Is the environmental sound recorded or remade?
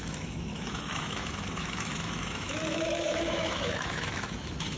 remade